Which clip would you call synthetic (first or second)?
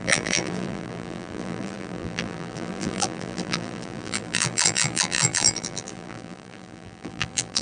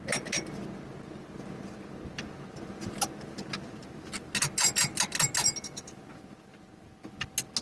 first